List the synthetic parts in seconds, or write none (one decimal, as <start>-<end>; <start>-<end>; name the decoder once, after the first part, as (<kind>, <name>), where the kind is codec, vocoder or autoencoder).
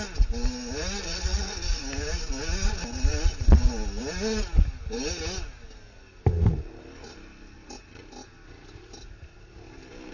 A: 1.0-1.5 (vocoder, Vocos)